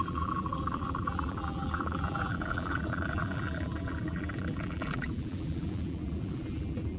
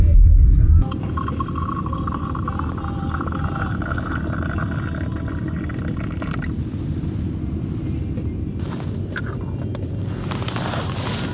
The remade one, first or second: first